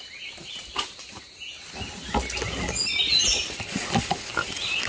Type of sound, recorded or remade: recorded